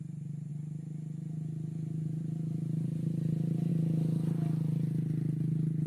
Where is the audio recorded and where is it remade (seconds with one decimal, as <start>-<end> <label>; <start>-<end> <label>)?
0.0-5.9 recorded